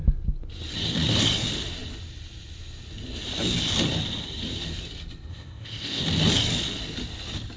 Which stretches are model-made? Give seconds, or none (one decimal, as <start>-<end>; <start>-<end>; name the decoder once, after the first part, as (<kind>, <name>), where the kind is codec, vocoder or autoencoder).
5.3-6.0 (codec, ZipCodec)